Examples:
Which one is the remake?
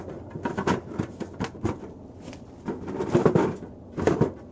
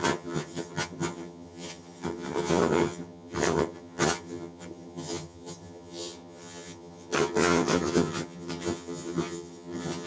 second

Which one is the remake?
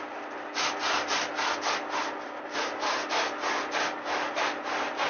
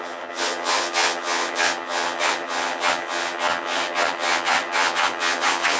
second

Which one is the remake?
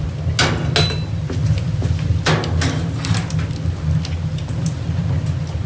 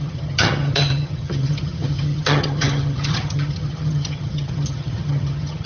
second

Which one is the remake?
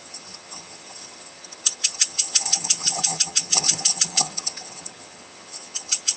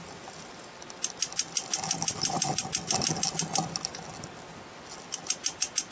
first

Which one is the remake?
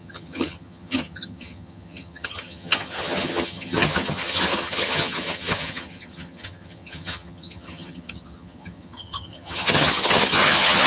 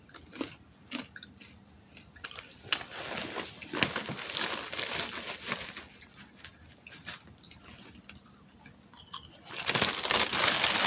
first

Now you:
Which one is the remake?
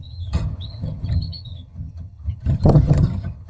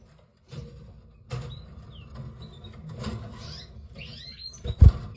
first